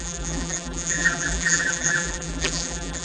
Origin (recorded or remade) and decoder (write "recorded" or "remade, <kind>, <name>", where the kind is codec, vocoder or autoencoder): remade, vocoder, BigVGAN v2